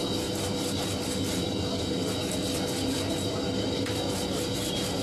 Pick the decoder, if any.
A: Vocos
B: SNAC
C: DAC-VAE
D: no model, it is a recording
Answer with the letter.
D